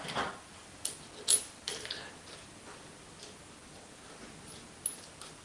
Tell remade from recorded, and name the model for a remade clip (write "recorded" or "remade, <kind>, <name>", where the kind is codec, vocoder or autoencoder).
recorded